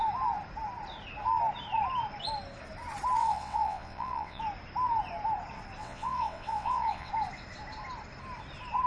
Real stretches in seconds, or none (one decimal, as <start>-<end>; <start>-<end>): 0.0-3.2; 4.4-5.8; 7.1-8.9